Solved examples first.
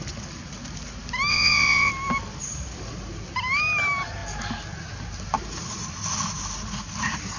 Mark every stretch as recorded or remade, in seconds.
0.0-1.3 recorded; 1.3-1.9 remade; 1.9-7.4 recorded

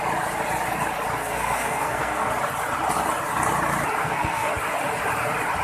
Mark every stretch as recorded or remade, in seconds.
0.0-1.2 recorded; 1.2-2.3 remade; 2.3-4.0 recorded; 4.0-4.5 remade; 4.5-5.6 recorded

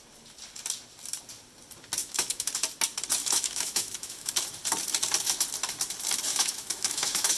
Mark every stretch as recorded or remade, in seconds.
0.0-2.0 recorded; 2.0-2.5 remade; 2.5-3.2 recorded; 3.2-4.3 remade; 4.3-6.3 recorded; 6.3-7.4 remade

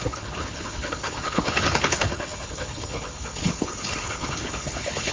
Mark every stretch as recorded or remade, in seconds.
0.0-5.1 remade

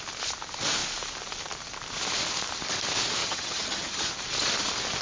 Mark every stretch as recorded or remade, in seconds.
0.0-3.2 recorded; 3.2-4.1 remade; 4.1-5.0 recorded